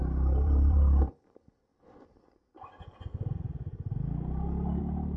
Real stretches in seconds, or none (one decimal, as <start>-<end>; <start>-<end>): 1.7-4.8